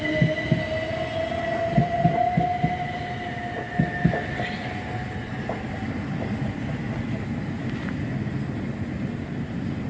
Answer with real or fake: real